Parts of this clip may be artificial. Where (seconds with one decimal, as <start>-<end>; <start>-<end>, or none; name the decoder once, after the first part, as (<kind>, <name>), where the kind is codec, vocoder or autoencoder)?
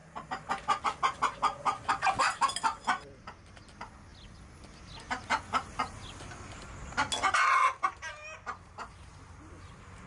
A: none